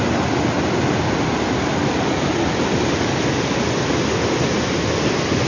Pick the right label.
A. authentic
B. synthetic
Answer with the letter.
A